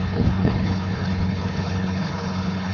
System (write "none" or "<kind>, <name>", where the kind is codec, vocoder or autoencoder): codec, HILCodec